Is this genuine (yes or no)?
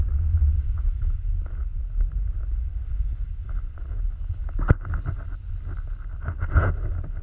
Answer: yes